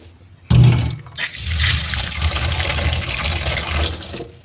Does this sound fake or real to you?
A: real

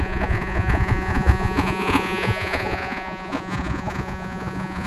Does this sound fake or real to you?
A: fake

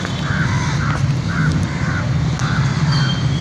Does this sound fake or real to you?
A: real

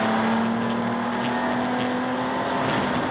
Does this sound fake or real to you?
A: real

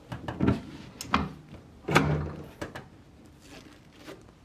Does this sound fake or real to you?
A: real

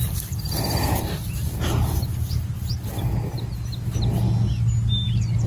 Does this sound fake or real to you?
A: real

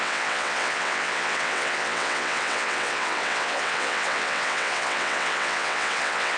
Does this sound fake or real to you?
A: fake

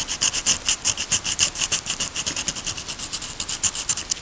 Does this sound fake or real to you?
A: real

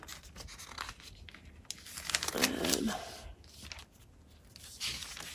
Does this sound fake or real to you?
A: real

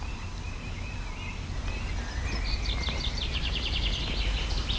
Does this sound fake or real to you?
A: real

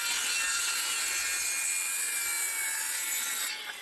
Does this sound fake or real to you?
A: real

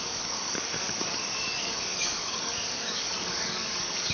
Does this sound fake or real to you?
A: fake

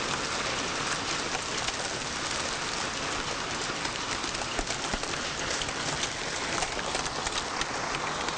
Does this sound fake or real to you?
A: real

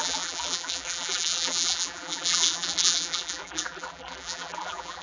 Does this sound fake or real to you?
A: fake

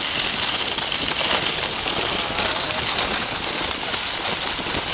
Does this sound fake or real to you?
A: real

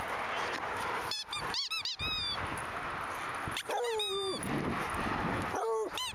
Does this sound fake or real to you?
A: real